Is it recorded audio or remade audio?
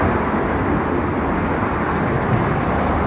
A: recorded